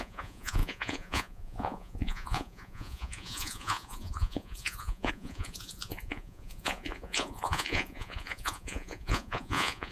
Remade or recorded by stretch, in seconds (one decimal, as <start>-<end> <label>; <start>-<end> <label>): 0.0-9.9 remade